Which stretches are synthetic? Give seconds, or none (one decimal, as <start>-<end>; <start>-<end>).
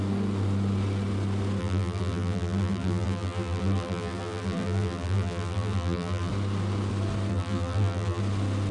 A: 1.6-6.3; 7.3-8.2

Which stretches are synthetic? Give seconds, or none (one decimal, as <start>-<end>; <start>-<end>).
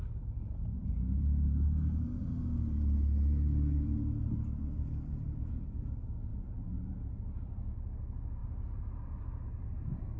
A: 6.3-7.7; 8.4-9.4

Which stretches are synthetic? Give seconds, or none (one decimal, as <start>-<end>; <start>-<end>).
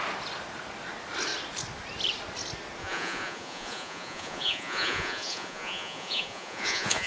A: 2.8-7.1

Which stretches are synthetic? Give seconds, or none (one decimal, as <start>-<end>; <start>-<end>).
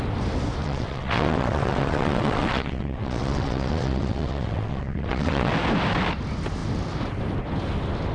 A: 0.6-5.5